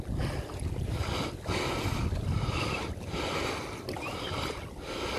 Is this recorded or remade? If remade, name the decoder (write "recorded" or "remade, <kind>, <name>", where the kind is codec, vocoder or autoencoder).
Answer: recorded